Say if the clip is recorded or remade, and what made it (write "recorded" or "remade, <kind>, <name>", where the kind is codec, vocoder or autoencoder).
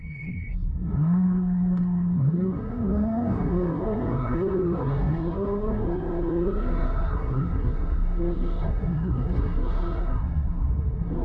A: remade, codec, SNAC